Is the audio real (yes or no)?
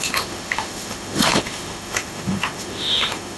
no